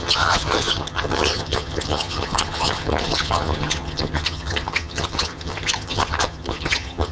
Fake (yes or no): yes